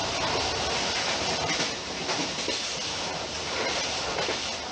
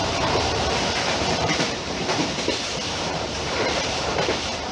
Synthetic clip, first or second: second